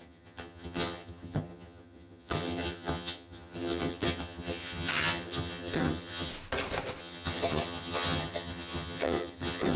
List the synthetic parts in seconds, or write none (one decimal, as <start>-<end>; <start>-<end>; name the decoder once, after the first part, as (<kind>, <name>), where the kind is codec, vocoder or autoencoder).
0.0-6.3 (vocoder, HiFi-GAN); 7.0-9.8